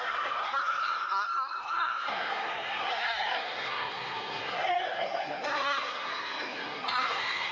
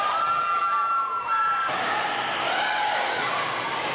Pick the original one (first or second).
second